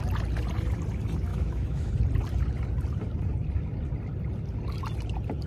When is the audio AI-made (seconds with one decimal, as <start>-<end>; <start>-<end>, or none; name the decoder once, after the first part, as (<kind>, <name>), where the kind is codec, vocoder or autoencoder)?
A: 1.3-1.9 (autoencoder, DAC-VAE)